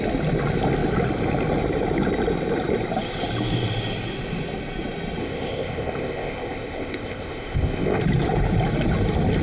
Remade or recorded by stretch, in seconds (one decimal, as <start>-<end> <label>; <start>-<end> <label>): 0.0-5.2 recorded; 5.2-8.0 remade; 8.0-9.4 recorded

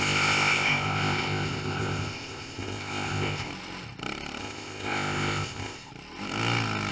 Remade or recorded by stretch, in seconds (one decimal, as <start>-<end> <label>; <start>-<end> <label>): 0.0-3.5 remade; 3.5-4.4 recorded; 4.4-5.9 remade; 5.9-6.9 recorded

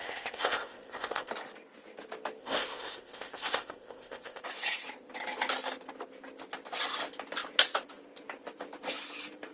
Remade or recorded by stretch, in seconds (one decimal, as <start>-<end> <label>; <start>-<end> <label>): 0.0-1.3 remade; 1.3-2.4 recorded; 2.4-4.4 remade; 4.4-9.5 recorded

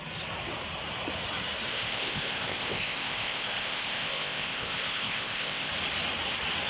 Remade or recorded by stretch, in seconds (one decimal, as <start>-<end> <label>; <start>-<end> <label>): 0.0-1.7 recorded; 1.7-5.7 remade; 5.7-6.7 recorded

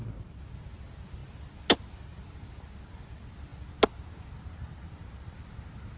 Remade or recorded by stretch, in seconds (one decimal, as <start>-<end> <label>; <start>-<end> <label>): 0.0-6.0 recorded

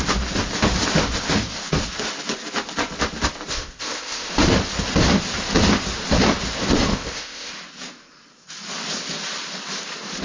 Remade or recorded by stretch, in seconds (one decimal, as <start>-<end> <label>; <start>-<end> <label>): 0.0-3.5 recorded; 3.5-4.3 remade; 4.3-6.9 recorded; 6.9-7.5 remade; 7.5-10.2 recorded

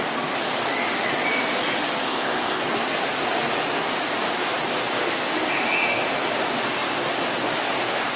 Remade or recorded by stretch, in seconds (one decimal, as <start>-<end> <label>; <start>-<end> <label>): 0.0-2.0 recorded; 2.0-2.6 remade; 2.6-8.2 recorded